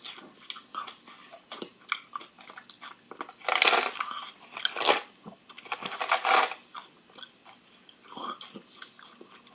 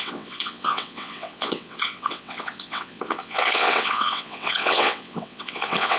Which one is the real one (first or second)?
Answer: first